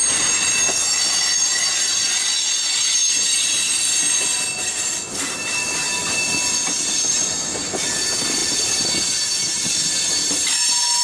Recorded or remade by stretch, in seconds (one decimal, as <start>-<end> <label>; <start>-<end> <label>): 0.0-11.0 recorded